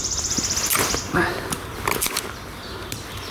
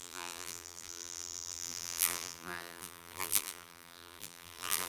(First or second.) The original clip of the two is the first